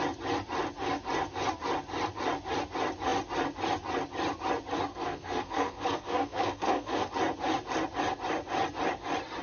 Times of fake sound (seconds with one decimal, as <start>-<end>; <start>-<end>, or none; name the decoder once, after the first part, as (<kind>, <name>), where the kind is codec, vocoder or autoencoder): 4.9-7.1 (codec, SNAC)